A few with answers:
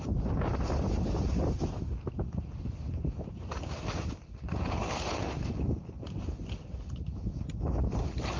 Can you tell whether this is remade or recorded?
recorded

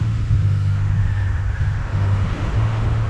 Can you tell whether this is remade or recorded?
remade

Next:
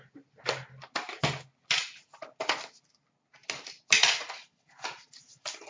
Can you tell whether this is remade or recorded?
recorded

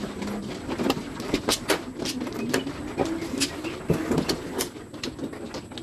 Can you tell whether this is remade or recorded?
recorded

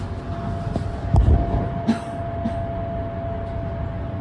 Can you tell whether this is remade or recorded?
recorded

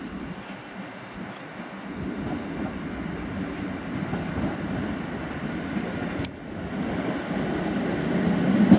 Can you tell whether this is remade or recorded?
recorded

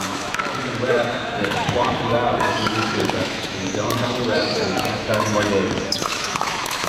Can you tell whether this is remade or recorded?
remade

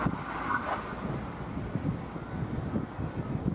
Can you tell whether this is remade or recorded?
recorded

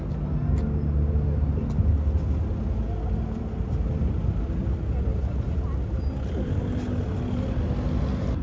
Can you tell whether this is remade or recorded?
recorded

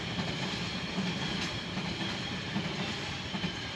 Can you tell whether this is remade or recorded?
remade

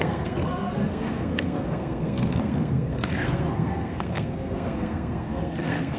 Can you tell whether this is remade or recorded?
remade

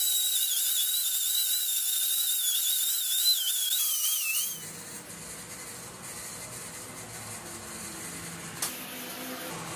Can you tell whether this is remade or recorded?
recorded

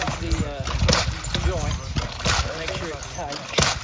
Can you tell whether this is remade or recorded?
recorded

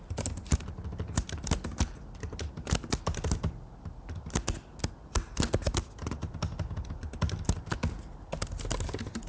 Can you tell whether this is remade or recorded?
recorded